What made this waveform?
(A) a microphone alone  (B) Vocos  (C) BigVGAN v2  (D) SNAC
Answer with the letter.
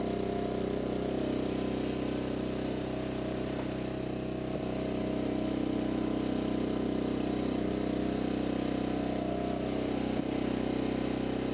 A